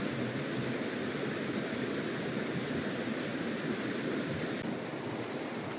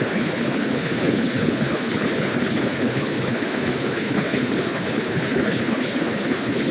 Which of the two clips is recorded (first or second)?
first